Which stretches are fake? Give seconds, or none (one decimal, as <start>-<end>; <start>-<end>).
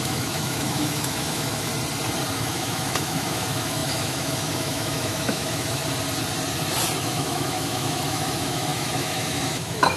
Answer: 0.0-1.7; 2.3-5.8; 7.0-10.0